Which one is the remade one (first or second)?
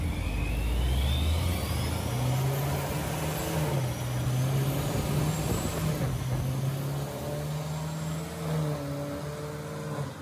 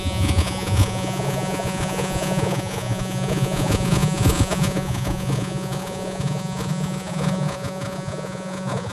second